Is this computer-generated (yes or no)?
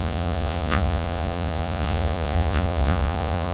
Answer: yes